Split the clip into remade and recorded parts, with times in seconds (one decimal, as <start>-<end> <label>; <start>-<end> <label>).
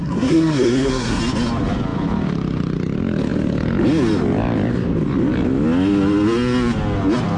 0.0-1.2 remade; 1.2-7.4 recorded